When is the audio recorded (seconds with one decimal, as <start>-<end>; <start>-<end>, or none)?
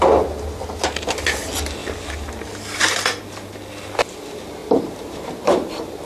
0.0-4.6